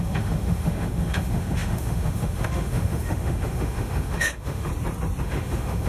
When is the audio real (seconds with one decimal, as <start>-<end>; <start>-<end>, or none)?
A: 4.7-5.2